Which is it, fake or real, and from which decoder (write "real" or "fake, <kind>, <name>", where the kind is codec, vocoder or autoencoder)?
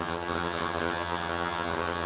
fake, vocoder, HiFi-GAN